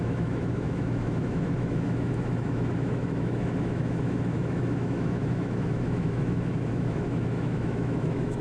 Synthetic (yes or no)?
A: yes